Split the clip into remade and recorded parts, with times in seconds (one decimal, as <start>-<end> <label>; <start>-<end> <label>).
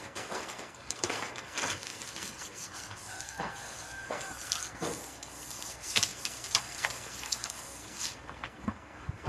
0.0-9.3 remade